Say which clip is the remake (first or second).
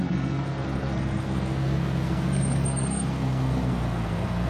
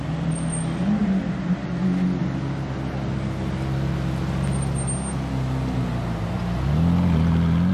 first